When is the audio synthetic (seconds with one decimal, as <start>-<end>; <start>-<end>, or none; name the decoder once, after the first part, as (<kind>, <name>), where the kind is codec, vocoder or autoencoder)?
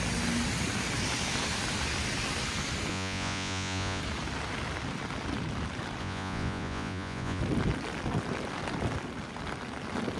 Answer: 2.9-4.0 (vocoder, Vocos); 6.0-7.4